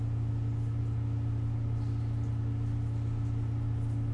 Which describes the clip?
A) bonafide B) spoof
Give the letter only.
A